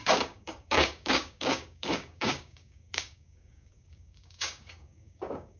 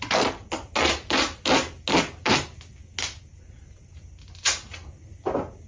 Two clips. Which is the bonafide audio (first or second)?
second